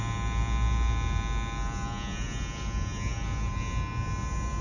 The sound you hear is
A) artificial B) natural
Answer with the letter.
B